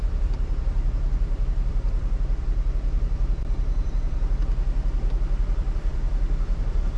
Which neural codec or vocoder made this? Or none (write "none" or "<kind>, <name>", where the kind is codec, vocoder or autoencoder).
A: vocoder, BigVGAN v2